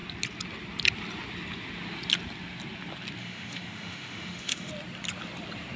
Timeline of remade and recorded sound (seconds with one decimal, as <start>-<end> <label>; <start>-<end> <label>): 0.0-3.2 recorded; 3.2-4.7 remade; 4.7-5.8 recorded